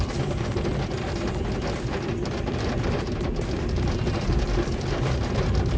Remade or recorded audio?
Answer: remade